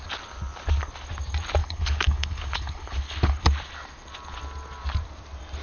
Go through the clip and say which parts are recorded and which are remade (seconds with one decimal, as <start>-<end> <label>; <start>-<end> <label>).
0.0-1.6 recorded; 1.6-3.4 remade; 3.4-5.6 recorded